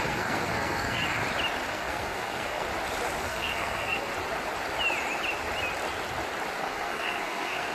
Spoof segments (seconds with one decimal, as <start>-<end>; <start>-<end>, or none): 0.0-1.2; 1.7-2.7; 3.2-4.1; 6.6-7.7